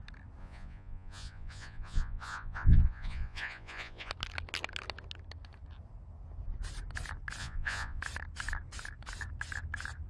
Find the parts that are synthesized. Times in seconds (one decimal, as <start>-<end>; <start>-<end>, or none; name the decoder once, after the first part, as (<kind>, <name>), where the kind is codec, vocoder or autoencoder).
0.4-4.1 (vocoder, Vocos); 7.4-8.0